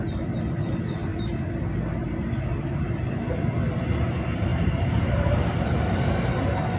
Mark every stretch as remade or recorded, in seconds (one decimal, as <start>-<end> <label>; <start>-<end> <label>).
0.0-1.1 recorded; 1.1-3.6 remade; 3.6-4.5 recorded; 4.5-5.7 remade; 5.7-6.8 recorded